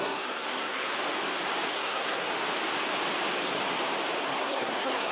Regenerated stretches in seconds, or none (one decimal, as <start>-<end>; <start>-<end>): 0.0-0.9; 1.7-2.3; 4.3-5.1